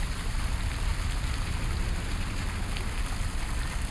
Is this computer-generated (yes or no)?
no